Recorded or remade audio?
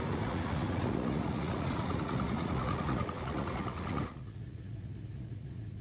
remade